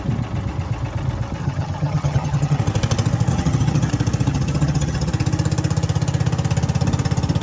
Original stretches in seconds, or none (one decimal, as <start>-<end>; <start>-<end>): 0.0-1.4; 2.6-3.3; 3.9-4.3; 5.1-7.4

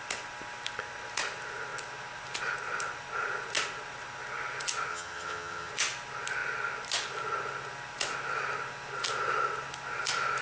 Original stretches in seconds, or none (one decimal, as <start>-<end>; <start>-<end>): 0.0-4.9; 5.7-10.4

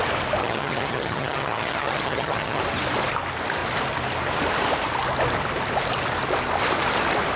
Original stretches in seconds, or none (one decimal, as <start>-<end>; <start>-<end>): 0.0-0.4; 2.6-7.4

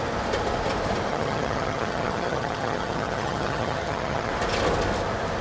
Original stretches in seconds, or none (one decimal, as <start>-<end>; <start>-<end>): 0.0-1.1; 4.3-5.4